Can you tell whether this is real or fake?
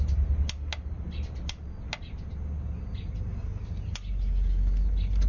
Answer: real